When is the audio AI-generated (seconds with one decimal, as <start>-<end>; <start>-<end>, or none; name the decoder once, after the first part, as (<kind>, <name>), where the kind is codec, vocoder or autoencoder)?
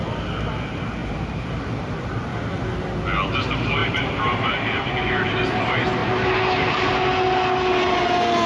1.0-2.2 (vocoder, BigVGAN v2); 3.8-4.9